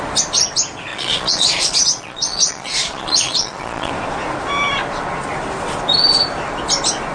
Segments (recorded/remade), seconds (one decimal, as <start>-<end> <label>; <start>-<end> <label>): 0.0-0.9 recorded; 0.9-3.9 remade; 3.9-7.1 recorded